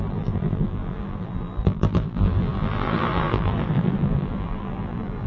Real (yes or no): no